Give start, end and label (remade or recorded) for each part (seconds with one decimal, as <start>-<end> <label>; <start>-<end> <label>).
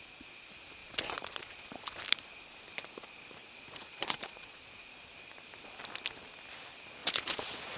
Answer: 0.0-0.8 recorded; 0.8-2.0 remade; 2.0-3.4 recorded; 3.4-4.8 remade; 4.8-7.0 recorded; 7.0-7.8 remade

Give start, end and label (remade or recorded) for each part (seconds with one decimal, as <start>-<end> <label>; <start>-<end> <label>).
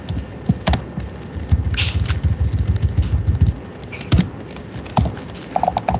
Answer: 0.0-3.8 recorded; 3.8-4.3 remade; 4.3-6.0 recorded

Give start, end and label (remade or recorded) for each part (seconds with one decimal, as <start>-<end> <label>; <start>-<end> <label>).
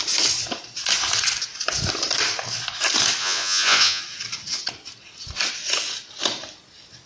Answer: 0.0-3.2 recorded; 3.2-4.0 remade; 4.0-7.1 recorded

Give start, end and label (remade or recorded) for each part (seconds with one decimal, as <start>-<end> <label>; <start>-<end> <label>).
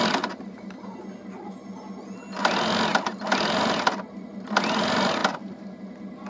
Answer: 0.0-6.3 recorded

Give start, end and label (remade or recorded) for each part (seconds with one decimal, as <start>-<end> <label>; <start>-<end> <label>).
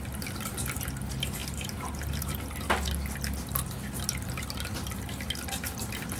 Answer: 0.0-6.2 recorded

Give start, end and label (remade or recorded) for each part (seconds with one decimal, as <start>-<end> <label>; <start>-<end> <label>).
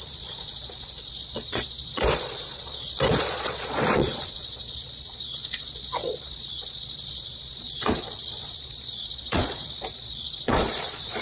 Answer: 0.0-11.2 remade